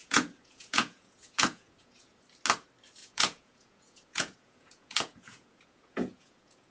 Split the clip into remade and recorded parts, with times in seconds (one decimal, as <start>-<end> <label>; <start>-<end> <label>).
0.0-2.2 remade; 2.2-3.0 recorded; 3.0-6.7 remade